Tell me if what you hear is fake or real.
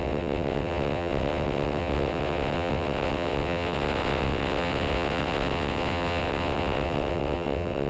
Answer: fake